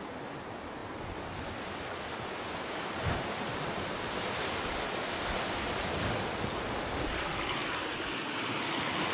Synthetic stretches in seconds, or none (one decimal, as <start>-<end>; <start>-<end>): none